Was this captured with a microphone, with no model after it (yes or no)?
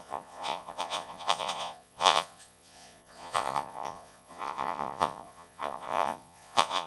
no